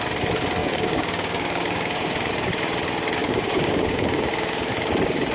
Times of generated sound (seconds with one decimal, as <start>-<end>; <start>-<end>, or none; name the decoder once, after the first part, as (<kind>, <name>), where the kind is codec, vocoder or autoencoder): 0.6-2.3 (codec, DAC); 3.2-4.7